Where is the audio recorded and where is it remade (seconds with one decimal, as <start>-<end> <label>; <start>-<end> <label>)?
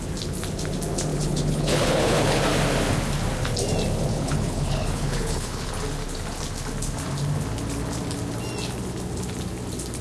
0.0-1.1 recorded; 1.1-2.4 remade; 2.4-4.1 recorded; 4.1-5.7 remade; 5.7-10.0 recorded